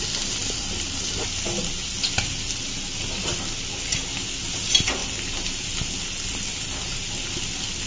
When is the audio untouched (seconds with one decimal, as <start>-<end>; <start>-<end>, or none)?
0.0-7.9